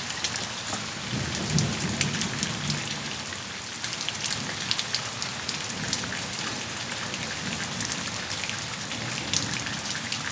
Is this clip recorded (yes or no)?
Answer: yes